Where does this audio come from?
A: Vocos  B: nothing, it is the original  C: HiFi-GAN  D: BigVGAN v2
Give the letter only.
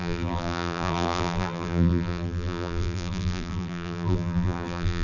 D